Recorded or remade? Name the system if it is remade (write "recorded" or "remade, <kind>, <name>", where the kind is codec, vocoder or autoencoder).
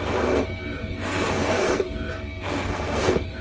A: remade, codec, SNAC